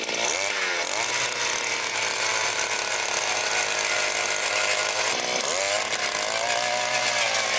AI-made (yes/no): no